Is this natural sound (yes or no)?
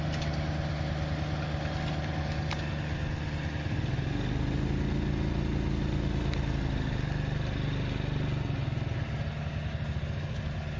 yes